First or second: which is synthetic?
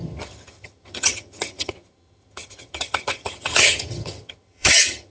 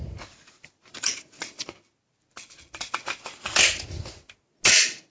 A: first